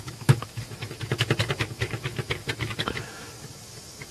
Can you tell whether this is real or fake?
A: fake